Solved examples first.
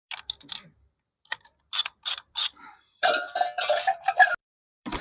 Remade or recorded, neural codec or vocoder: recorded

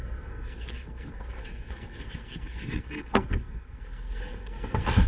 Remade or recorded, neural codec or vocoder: remade, codec, SNAC